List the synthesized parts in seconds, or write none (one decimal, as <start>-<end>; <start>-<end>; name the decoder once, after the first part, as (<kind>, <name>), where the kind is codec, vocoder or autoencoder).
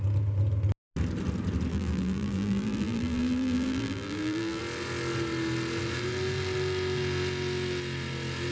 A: 1.7-4.6 (vocoder, BigVGAN v2)